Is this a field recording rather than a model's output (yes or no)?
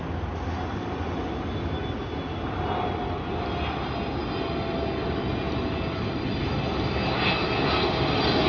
yes